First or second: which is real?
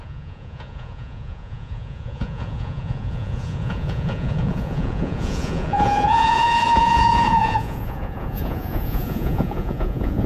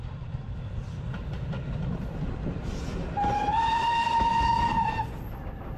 second